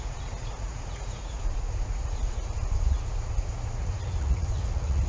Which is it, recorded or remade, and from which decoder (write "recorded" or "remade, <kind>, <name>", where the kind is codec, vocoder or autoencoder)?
remade, vocoder, Vocos